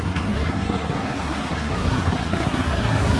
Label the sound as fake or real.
fake